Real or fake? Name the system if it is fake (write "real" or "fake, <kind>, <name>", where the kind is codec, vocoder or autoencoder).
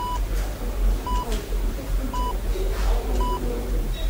fake, vocoder, BigVGAN v2